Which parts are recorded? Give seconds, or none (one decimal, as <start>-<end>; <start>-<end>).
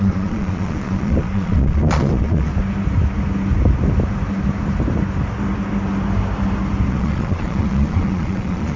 2.5-6.9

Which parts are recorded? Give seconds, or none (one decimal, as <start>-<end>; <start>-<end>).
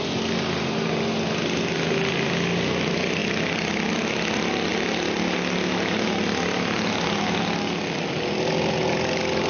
0.0-9.5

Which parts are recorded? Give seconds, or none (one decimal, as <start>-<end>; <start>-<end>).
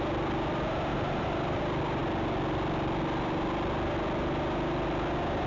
0.0-0.9; 1.6-5.5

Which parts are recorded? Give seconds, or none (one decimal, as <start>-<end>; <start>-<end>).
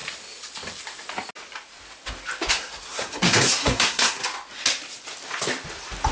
0.0-2.5; 4.2-6.1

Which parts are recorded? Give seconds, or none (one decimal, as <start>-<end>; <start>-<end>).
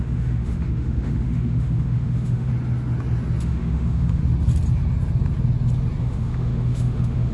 2.5-3.4; 4.2-6.0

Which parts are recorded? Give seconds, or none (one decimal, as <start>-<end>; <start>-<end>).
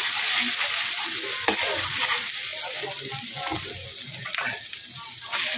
0.0-5.6